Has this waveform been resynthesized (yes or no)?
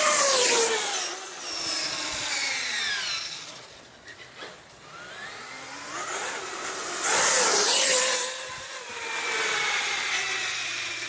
no